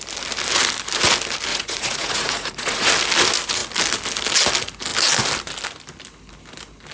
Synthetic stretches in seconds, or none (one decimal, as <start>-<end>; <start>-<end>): 1.5-2.9